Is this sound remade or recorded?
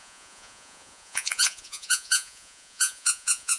remade